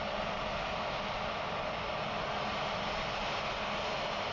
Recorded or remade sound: recorded